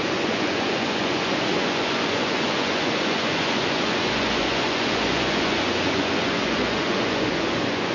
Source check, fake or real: fake